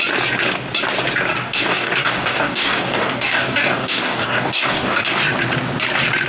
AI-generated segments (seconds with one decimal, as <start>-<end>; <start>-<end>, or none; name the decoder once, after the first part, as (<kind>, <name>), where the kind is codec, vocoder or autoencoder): 1.4-5.2 (codec, DAC)